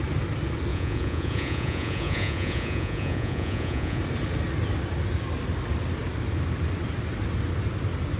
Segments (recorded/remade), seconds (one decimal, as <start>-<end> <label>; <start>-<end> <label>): 0.0-0.7 recorded; 0.7-4.0 remade; 4.0-8.2 recorded